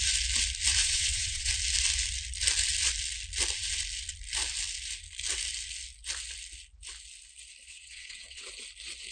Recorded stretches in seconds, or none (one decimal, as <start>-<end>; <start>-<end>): 0.0-0.8; 1.5-7.7; 8.5-9.1